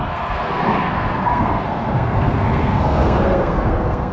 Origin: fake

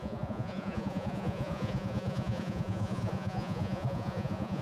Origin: fake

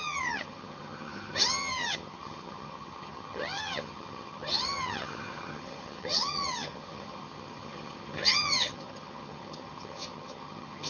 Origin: fake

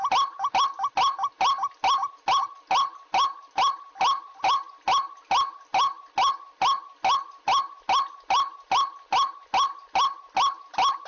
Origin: real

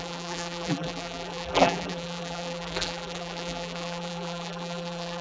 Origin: fake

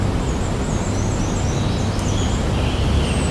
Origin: real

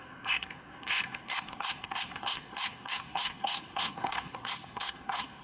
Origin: fake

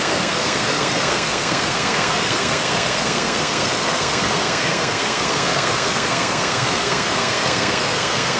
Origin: fake